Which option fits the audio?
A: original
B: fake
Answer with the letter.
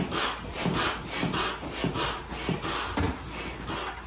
A